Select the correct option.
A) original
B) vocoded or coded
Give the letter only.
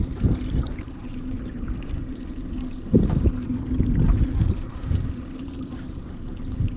B